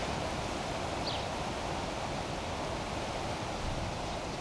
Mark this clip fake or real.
real